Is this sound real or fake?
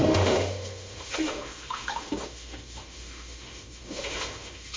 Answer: fake